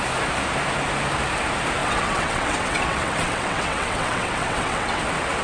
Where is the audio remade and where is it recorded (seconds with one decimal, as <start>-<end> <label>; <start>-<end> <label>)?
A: 0.0-1.8 recorded; 1.8-5.0 remade; 5.0-5.4 recorded